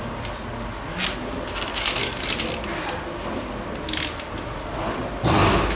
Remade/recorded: recorded